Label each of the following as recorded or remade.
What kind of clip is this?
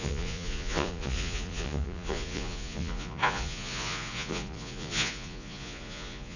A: remade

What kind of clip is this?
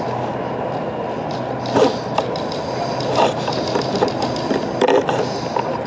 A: recorded